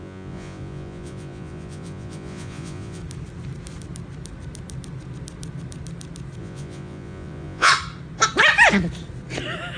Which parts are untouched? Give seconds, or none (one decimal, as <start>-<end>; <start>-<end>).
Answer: 3.0-6.4; 7.7-9.8